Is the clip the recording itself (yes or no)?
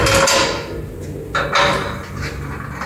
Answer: yes